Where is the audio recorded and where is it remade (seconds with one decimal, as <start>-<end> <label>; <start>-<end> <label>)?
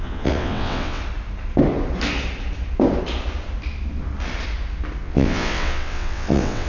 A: 0.0-1.0 remade; 1.0-5.0 recorded; 5.0-6.7 remade